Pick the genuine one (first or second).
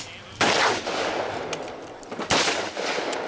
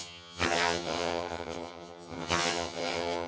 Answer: first